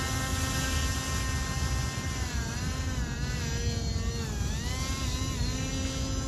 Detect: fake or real real